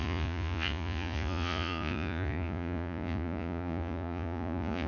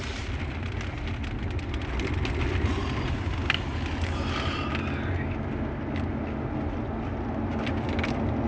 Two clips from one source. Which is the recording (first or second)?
second